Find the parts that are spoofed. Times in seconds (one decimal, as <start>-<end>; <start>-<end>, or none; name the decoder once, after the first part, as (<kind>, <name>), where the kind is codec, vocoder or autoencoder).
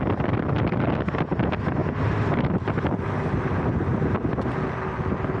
none